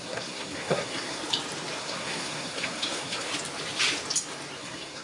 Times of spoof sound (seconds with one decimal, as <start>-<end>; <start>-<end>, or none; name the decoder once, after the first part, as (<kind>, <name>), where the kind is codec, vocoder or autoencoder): 0.0-1.2 (codec, SNAC); 1.8-3.3; 4.6-5.0